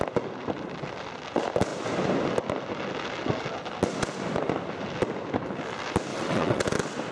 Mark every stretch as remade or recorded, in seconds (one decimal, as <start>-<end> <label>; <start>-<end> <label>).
0.0-6.1 recorded; 6.1-6.6 remade; 6.6-7.1 recorded